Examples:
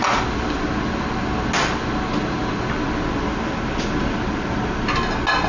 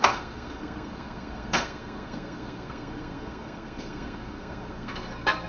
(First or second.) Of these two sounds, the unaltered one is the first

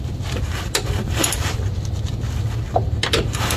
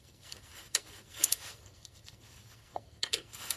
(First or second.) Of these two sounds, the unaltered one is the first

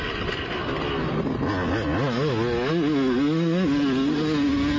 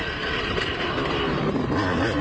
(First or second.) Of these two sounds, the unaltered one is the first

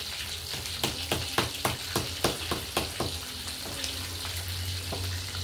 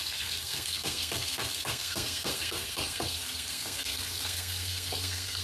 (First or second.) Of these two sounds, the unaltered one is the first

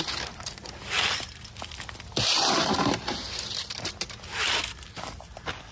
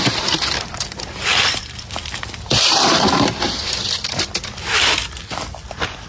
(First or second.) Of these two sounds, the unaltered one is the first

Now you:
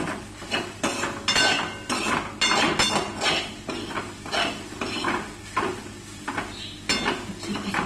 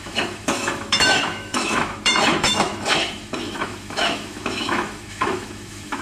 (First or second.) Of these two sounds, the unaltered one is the first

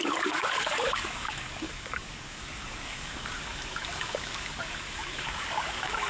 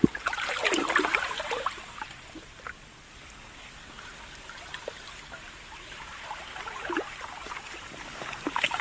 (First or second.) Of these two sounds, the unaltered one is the second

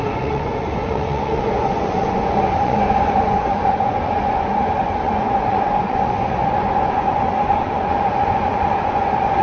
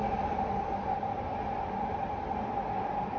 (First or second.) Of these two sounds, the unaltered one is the second